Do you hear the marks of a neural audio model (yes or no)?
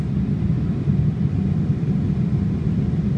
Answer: no